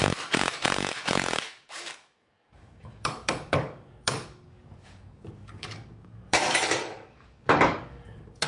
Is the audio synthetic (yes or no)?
yes